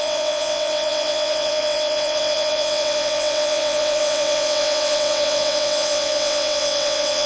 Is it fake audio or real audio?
fake